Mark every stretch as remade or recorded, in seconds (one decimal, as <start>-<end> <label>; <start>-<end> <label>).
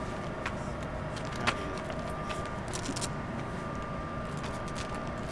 0.0-5.3 recorded